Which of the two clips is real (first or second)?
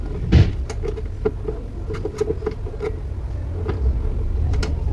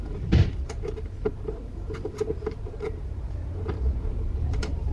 first